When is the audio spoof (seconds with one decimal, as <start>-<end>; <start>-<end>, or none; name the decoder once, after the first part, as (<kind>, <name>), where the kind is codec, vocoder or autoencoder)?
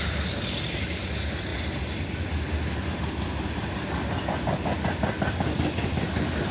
none